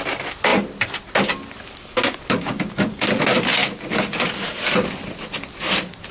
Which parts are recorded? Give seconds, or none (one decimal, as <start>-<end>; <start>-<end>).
0.0-6.1